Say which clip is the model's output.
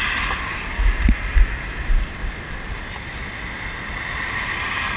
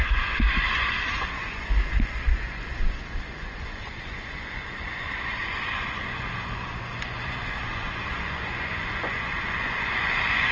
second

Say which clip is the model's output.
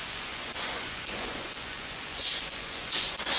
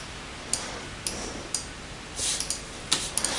first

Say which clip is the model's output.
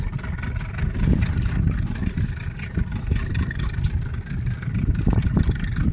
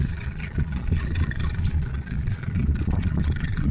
second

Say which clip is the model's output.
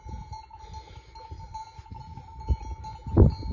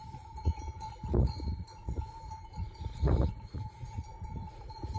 second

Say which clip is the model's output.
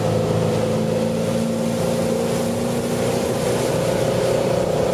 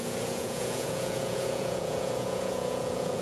second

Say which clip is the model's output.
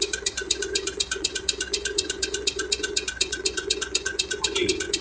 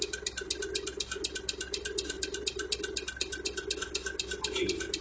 first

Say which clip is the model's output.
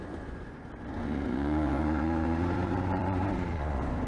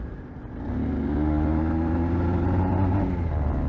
first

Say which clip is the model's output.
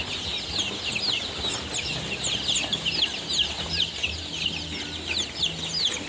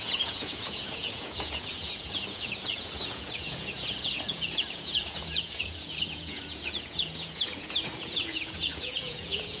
second